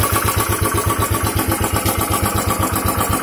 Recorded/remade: recorded